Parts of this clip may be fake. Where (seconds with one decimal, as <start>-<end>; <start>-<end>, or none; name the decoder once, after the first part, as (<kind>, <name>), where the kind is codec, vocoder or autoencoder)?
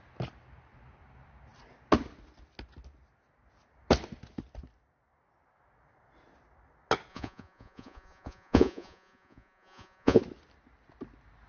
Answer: 7.1-10.2 (vocoder, Vocos)